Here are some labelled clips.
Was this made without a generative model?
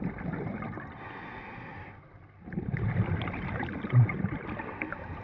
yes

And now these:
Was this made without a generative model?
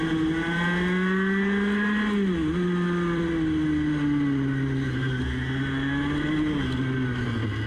yes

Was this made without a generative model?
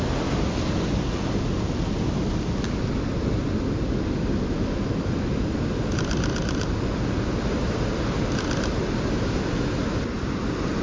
yes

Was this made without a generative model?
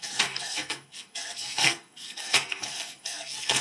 no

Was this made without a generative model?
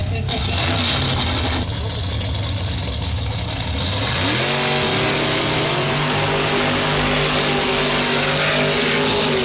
yes